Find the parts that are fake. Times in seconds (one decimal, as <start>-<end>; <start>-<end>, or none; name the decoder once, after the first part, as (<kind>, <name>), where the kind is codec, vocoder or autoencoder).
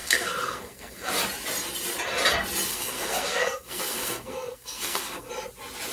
0.0-1.1 (codec, SNAC); 2.7-5.3